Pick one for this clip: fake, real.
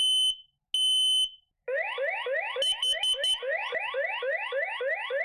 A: real